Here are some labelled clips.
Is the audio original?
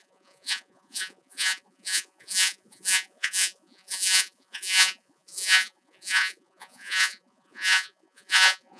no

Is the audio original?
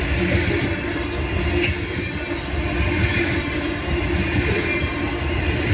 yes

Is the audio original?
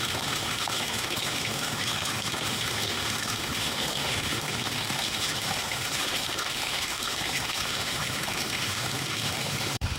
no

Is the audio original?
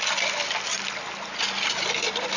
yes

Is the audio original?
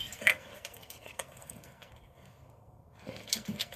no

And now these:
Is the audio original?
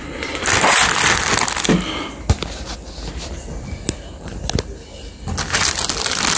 yes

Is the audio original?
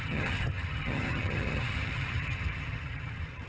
no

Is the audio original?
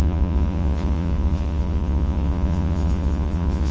no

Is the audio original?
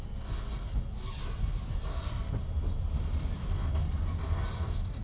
yes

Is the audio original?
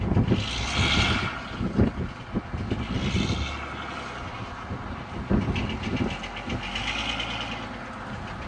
yes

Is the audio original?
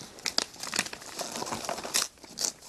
yes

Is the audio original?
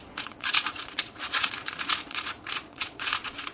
no